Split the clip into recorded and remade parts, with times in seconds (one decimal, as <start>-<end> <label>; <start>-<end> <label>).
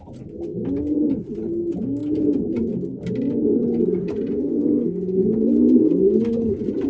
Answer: 0.0-6.9 recorded